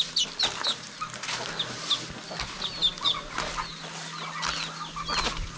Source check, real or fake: real